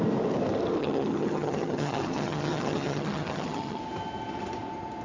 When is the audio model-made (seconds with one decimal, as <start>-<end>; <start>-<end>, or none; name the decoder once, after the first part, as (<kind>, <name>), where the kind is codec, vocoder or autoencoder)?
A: 0.8-3.8 (vocoder, HiFi-GAN)